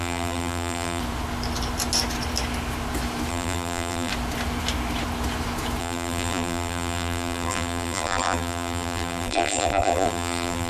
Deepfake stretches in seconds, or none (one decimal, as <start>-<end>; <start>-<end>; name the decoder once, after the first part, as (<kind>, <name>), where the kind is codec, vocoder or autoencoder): 0.0-1.0 (vocoder, BigVGAN v2); 3.3-4.1; 5.8-10.7